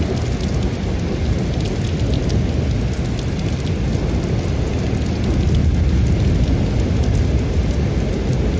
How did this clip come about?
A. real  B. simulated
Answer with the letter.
A